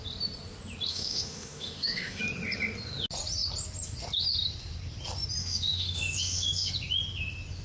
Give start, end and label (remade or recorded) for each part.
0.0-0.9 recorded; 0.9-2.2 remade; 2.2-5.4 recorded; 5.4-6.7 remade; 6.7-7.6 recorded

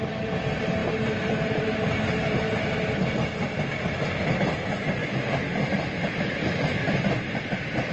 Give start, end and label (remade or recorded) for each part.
0.0-5.0 recorded; 5.0-5.5 remade; 5.5-7.9 recorded

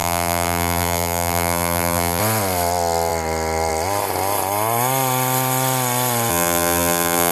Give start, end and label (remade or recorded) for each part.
0.0-2.2 remade; 2.2-6.3 recorded; 6.3-7.3 remade

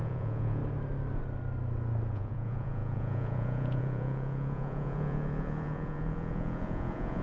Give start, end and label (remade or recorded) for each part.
0.0-0.6 remade; 0.6-2.1 recorded; 2.1-7.2 remade

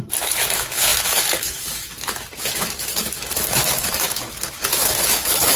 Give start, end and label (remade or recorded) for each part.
0.0-5.6 remade

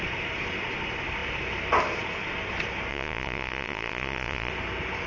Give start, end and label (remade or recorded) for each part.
0.0-2.9 recorded; 2.9-4.5 remade; 4.5-5.1 recorded

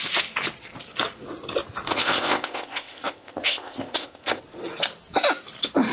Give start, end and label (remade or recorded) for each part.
0.0-1.9 recorded; 1.9-4.4 remade; 4.4-5.9 recorded